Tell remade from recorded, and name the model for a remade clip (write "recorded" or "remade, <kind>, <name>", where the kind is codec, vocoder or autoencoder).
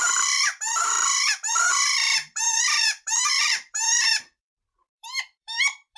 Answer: remade, vocoder, BigVGAN v2